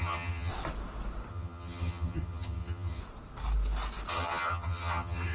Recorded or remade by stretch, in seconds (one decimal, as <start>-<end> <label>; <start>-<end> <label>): 0.0-0.5 remade; 0.5-1.3 recorded; 1.3-3.0 remade; 3.0-4.1 recorded; 4.1-5.3 remade